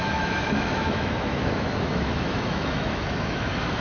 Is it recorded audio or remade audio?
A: remade